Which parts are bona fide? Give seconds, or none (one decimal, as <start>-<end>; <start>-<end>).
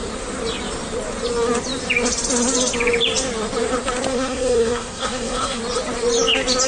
0.0-4.1; 5.6-6.7